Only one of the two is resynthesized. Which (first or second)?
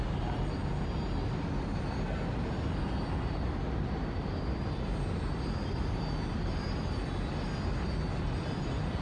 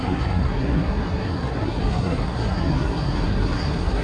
second